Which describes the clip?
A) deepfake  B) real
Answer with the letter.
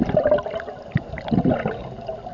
B